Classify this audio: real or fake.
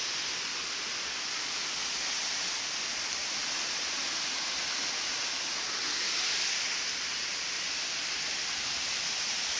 real